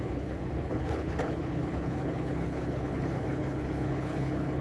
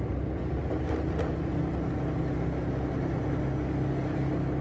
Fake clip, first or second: first